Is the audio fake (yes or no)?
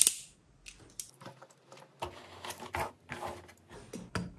no